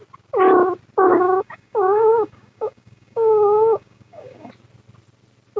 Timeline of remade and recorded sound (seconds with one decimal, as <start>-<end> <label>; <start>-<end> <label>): 0.0-1.1 recorded; 1.1-4.5 remade; 4.5-5.6 recorded